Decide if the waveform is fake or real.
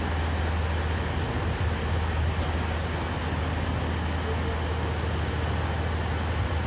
real